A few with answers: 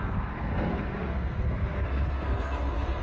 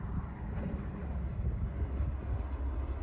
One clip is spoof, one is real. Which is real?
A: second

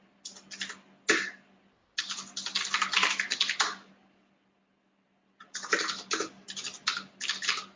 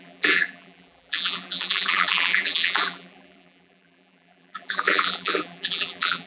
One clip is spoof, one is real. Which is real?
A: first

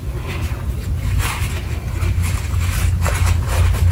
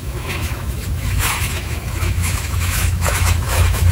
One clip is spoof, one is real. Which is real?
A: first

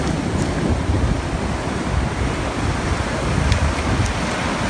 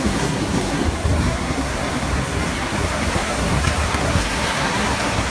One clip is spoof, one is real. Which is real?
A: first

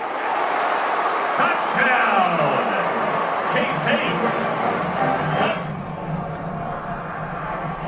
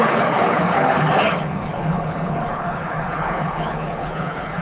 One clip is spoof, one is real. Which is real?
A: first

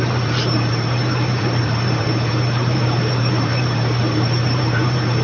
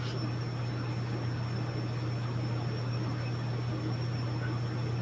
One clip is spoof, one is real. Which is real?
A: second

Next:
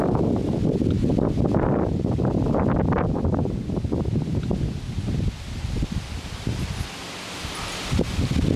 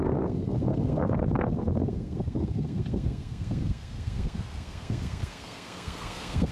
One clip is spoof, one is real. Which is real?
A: first